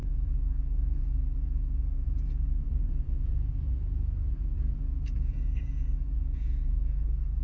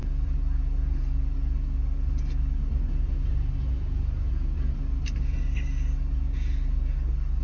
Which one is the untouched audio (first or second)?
second